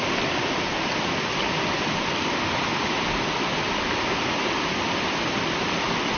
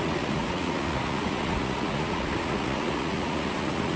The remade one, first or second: second